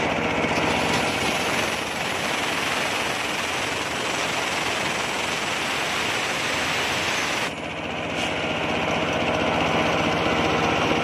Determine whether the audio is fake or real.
real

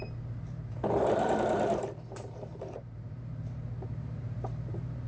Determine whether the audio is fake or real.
fake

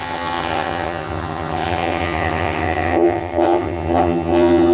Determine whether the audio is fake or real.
fake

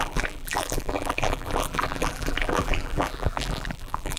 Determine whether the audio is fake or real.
fake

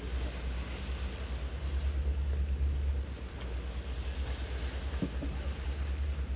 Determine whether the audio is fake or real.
real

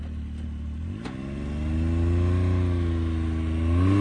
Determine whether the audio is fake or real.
real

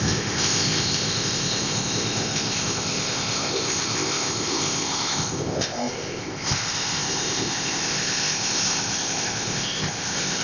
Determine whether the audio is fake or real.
fake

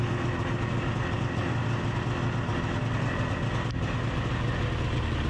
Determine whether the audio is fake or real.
real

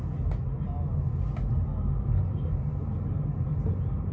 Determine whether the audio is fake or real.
real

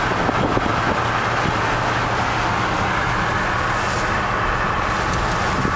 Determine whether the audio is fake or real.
real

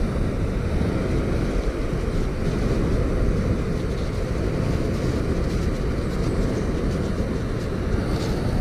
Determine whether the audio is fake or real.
real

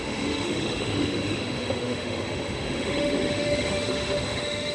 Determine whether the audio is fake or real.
fake